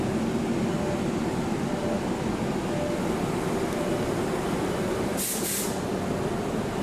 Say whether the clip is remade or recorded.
recorded